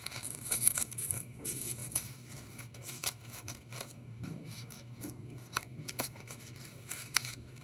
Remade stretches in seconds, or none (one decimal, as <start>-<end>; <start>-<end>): 0.0-7.6